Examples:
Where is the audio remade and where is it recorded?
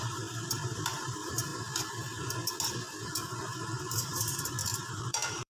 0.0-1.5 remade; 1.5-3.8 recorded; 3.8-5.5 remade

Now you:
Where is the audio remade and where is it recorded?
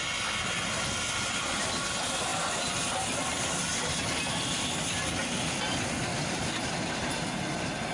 0.0-7.9 recorded